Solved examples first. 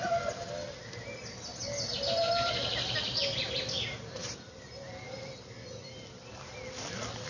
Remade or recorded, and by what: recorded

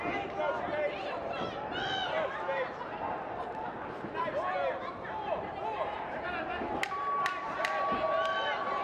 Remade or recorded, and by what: recorded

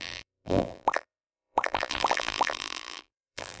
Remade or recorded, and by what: remade, vocoder, BigVGAN v2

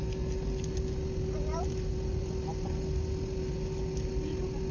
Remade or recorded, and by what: recorded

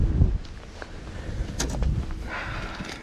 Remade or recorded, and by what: recorded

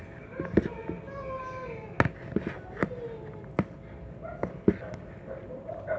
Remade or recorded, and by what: recorded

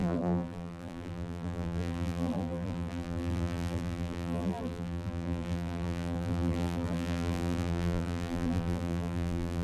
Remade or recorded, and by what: remade, vocoder, BigVGAN v2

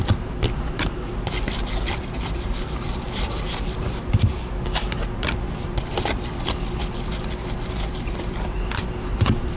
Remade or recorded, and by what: remade, vocoder, BigVGAN v2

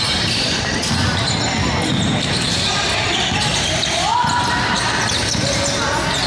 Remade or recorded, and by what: recorded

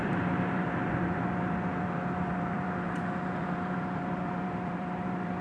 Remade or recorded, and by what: remade, vocoder, BigVGAN v2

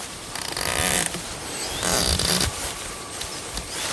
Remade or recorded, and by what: remade, vocoder, BigVGAN v2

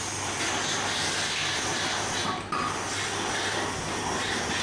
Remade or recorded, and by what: recorded